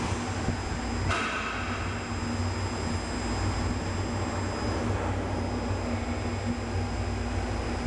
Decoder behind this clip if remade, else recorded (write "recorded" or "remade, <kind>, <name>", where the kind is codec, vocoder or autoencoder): recorded